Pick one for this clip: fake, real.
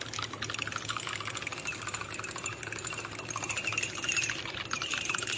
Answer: real